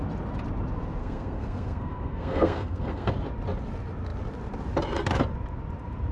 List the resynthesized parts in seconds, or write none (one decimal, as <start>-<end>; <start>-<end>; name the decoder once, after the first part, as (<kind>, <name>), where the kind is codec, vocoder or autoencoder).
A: 1.0-3.1 (codec, SNAC)